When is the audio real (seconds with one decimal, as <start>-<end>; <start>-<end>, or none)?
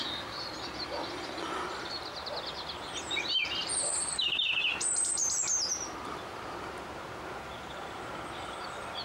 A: 0.0-3.6; 5.9-9.0